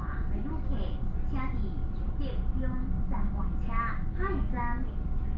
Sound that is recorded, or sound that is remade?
recorded